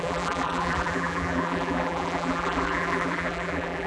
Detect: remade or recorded remade